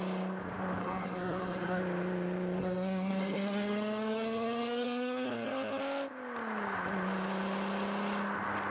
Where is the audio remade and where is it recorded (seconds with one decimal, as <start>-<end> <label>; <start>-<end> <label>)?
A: 0.0-0.8 recorded; 0.8-1.8 remade; 1.8-2.6 recorded; 2.6-5.8 remade; 5.8-8.7 recorded